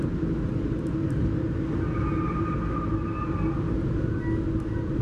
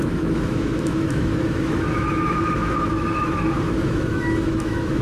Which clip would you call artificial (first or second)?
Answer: second